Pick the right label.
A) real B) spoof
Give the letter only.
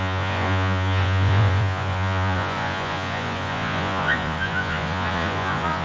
B